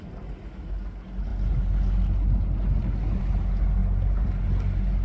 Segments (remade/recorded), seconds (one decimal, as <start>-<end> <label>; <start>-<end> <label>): 0.0-5.0 recorded